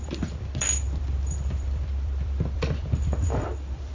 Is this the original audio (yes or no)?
no